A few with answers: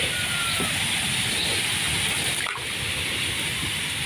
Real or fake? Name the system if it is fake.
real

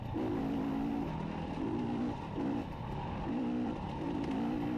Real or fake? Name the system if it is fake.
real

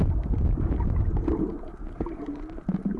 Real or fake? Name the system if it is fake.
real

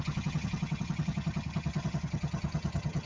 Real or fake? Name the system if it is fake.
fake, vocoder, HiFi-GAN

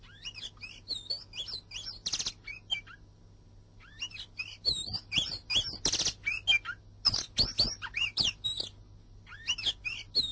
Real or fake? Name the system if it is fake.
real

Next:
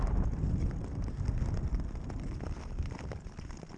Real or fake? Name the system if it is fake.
real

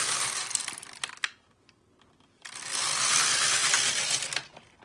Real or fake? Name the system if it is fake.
real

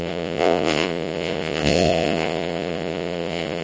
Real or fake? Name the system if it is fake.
fake, vocoder, Vocos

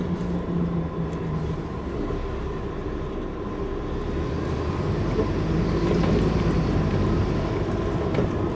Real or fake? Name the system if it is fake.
real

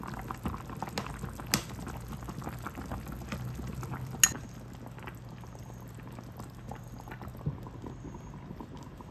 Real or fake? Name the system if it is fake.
real